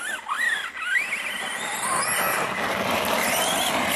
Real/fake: real